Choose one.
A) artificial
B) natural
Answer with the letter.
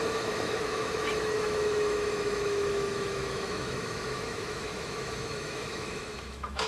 A